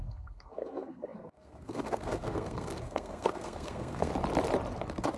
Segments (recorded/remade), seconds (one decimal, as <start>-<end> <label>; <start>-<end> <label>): 0.0-4.1 remade; 4.1-5.2 recorded